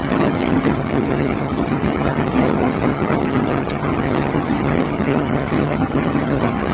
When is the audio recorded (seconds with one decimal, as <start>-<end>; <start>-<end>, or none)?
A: none